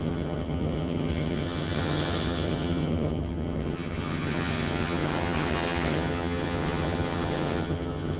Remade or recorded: remade